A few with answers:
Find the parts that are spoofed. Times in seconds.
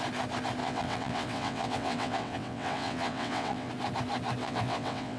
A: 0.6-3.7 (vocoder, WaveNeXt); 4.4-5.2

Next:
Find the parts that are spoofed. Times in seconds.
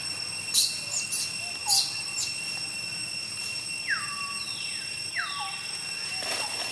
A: none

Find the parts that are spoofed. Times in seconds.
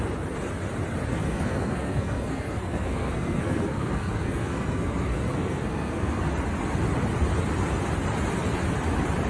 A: 1.1-6.2 (codec, SNAC)